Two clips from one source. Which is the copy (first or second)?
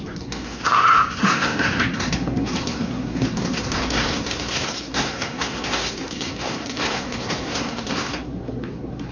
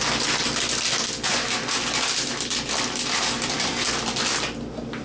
first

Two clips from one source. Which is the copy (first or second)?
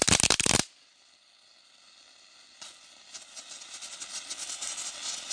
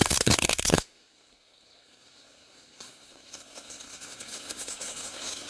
second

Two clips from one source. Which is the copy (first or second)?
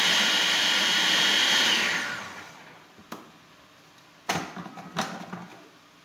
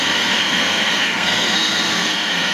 second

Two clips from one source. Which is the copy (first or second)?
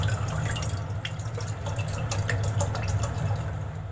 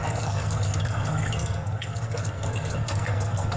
second